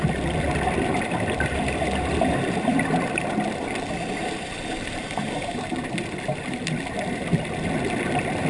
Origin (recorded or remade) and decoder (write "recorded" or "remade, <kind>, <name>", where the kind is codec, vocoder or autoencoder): remade, vocoder, BigVGAN v2